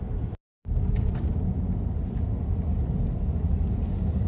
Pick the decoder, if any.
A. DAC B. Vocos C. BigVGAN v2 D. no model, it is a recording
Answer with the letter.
D